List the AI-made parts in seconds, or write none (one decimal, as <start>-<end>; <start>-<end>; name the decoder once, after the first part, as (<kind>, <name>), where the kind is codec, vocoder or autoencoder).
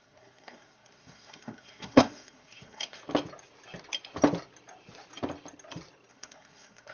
0.0-3.0 (codec, SNAC); 6.1-6.9